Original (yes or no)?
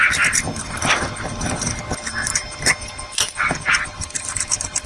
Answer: yes